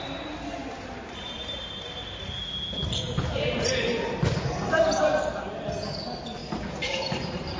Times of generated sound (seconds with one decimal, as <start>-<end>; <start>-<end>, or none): 0.6-2.2; 6.4-7.6